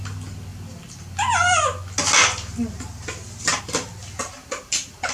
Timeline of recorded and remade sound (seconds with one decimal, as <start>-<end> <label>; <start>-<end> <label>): 0.0-5.1 recorded